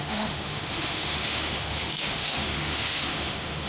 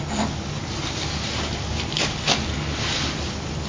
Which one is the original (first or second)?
second